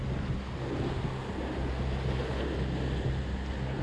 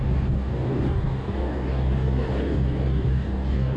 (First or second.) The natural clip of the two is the first